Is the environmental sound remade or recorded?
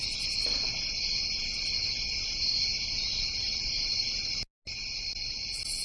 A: recorded